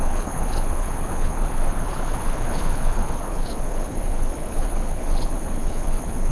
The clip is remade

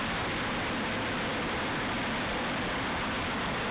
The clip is recorded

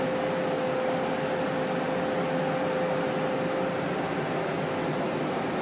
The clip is recorded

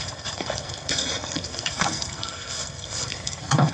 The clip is remade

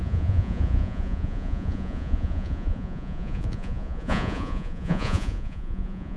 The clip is remade